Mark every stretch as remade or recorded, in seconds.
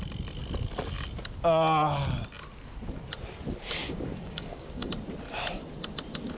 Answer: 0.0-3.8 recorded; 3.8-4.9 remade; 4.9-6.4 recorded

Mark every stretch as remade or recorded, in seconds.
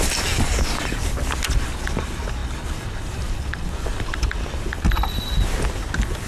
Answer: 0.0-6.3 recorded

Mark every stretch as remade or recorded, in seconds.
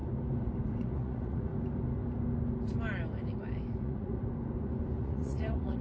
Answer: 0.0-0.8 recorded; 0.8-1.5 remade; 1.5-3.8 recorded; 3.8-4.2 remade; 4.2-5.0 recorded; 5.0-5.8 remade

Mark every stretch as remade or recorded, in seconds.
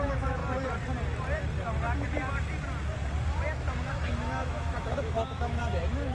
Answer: 0.0-0.4 remade; 0.4-3.9 recorded; 3.9-6.1 remade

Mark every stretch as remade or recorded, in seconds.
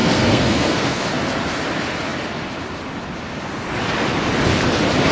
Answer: 0.0-1.0 remade; 1.0-5.1 recorded